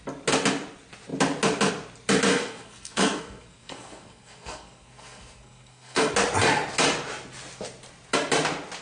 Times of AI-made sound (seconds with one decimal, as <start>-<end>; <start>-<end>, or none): 2.3-6.1